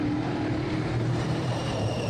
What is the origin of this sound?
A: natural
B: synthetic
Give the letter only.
B